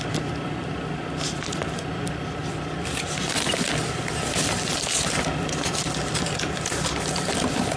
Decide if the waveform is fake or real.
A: real